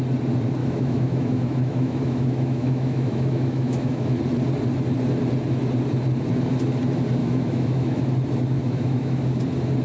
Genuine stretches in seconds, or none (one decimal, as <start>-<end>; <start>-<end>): 0.0-0.6; 4.2-7.2; 8.0-8.6; 9.4-9.8